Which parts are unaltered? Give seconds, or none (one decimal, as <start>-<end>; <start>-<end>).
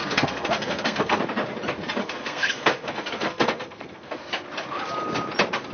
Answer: 1.2-2.0; 4.3-5.7